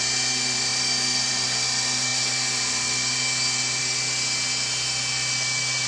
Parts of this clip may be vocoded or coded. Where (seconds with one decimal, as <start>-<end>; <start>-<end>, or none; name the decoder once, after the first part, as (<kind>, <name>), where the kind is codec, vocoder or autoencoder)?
none